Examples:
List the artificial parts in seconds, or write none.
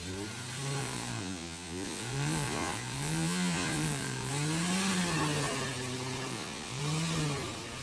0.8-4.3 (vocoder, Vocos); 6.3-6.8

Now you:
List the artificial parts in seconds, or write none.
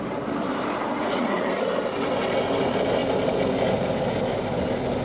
1.0-1.6 (vocoder, Vocos)